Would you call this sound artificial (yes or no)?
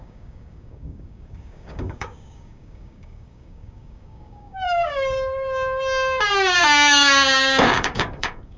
yes